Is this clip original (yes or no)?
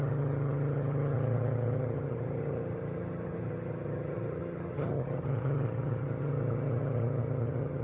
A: no